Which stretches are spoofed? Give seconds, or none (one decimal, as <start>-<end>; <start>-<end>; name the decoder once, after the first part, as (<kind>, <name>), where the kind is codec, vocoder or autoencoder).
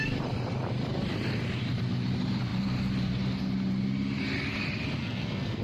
5.0-5.6 (codec, SNAC)